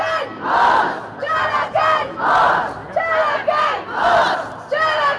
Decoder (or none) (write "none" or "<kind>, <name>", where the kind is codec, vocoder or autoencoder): none